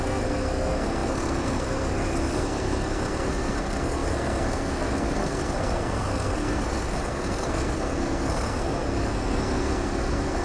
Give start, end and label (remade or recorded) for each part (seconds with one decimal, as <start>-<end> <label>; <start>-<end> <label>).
0.0-10.4 remade